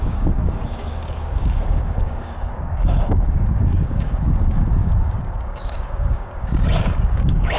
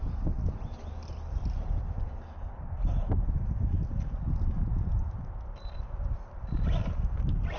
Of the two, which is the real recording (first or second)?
second